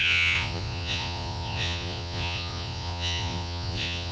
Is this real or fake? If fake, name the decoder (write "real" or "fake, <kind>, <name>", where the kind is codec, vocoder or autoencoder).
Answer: fake, vocoder, Vocos